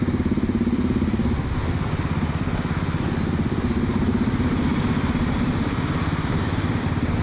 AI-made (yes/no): yes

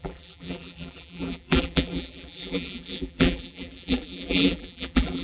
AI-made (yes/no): yes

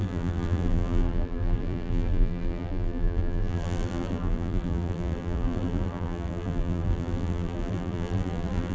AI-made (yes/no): yes